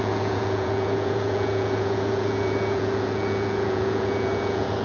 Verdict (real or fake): fake